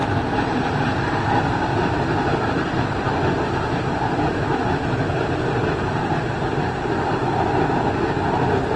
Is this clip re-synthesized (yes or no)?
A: no